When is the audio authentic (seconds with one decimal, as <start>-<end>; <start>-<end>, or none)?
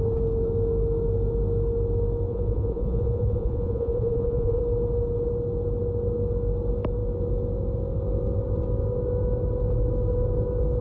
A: 0.0-2.3; 4.6-10.8